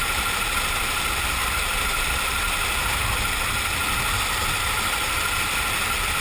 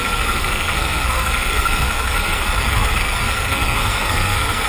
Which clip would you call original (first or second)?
first